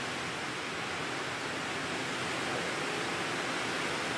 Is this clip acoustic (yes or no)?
yes